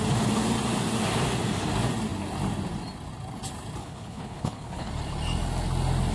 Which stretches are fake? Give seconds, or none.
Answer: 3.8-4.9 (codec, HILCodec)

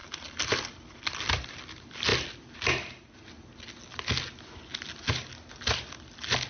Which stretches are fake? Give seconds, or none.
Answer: 0.0-1.5 (vocoder, BigVGAN v2)

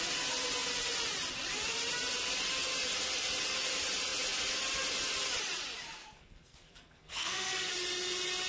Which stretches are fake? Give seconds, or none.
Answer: 6.0-7.7 (codec, SNAC)

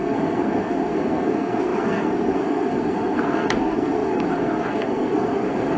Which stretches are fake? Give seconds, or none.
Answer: 0.0-5.8 (codec, SNAC)